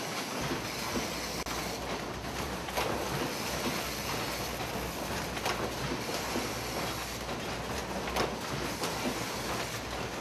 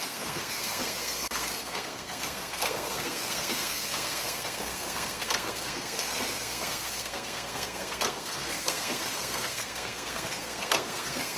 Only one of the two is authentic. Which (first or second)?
first